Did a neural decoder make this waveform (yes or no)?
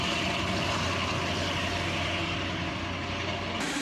no